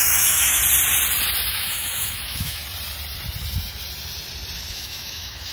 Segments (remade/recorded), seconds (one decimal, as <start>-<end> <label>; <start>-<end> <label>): 0.0-0.6 remade; 0.6-1.5 recorded; 1.5-2.6 remade; 2.6-4.7 recorded; 4.7-5.5 remade